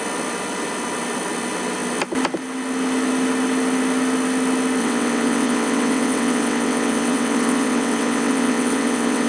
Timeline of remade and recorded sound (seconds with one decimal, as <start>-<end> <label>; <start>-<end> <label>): 0.0-4.8 recorded; 4.8-9.3 remade